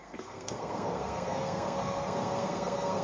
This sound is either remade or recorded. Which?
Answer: remade